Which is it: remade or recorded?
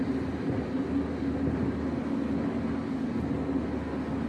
recorded